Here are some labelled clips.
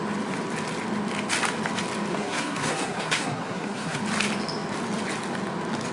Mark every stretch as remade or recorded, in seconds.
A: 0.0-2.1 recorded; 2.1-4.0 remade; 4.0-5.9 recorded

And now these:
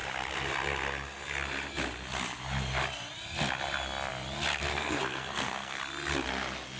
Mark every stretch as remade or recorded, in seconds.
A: 0.0-4.7 recorded; 4.7-5.8 remade; 5.8-6.8 recorded

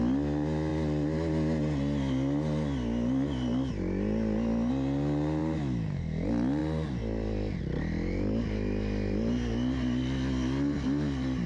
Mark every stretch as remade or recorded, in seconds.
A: 0.0-11.5 recorded

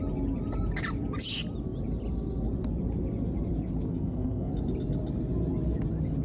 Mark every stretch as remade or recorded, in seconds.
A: 0.0-3.9 recorded; 3.9-4.5 remade; 4.5-6.2 recorded

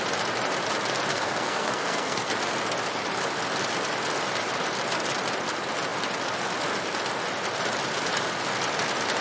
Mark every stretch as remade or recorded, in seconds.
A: 0.0-1.1 recorded; 1.1-2.3 remade; 2.3-9.2 recorded